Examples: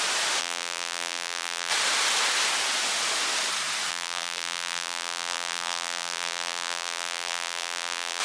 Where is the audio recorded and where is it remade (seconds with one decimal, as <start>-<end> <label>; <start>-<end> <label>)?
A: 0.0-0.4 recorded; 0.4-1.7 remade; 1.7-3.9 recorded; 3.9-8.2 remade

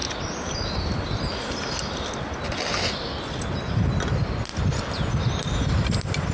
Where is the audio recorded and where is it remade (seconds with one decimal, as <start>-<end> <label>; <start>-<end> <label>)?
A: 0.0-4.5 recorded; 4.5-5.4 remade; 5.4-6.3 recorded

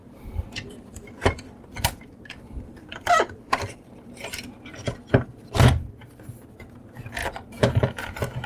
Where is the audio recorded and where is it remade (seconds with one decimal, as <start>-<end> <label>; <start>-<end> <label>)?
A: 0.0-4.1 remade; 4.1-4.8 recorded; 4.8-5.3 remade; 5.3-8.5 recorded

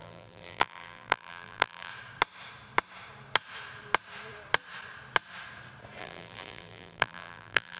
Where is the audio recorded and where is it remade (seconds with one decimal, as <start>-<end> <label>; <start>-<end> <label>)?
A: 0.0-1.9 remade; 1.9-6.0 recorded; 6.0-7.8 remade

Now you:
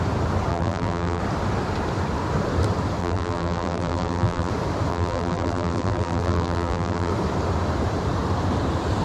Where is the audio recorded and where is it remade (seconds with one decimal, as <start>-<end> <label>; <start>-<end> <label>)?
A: 0.0-0.5 recorded; 0.5-1.2 remade; 1.2-3.0 recorded; 3.0-4.5 remade; 4.5-4.9 recorded; 4.9-7.1 remade; 7.1-9.0 recorded

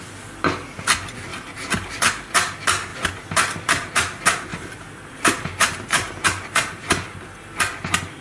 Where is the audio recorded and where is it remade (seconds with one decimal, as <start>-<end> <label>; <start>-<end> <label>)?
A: 0.0-1.3 recorded; 1.3-1.9 remade; 1.9-4.5 recorded; 4.5-6.8 remade; 6.8-8.2 recorded

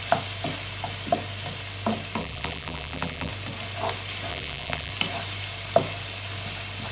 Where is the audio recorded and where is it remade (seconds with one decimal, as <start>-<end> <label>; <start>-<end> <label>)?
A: 0.0-2.2 recorded; 2.2-3.3 remade; 3.3-4.3 recorded; 4.3-4.9 remade; 4.9-6.9 recorded

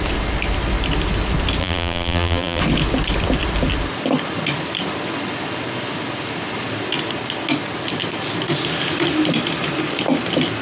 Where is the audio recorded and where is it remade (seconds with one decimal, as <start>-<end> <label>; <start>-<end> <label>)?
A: 0.0-1.6 recorded; 1.6-2.6 remade; 2.6-10.6 recorded